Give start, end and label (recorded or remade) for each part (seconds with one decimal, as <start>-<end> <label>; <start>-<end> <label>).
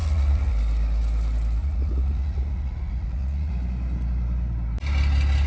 0.0-0.5 remade; 0.5-1.6 recorded; 1.6-3.5 remade; 3.5-5.5 recorded